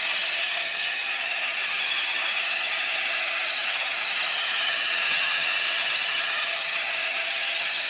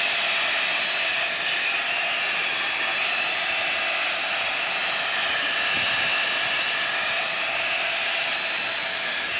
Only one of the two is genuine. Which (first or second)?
second